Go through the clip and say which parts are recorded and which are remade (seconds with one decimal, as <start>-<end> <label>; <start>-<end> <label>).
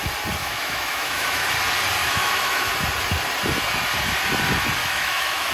0.0-0.4 recorded; 0.4-1.5 remade; 1.5-2.0 recorded; 2.0-2.7 remade; 2.7-4.8 recorded; 4.8-5.5 remade